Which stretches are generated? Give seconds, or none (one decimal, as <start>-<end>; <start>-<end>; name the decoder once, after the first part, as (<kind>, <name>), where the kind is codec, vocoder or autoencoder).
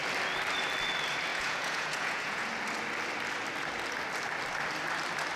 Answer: 1.3-2.5 (vocoder, Vocos)